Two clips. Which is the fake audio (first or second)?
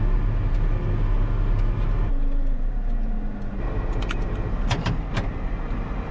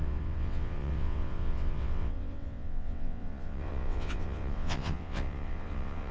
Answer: second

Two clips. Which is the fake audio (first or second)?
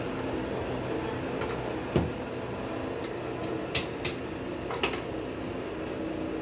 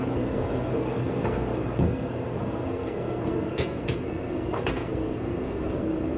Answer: second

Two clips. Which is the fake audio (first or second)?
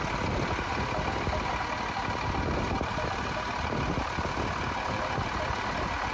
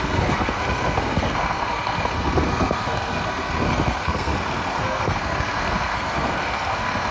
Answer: second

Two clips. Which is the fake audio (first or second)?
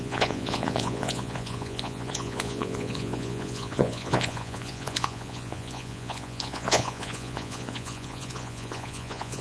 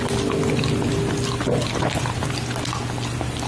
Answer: first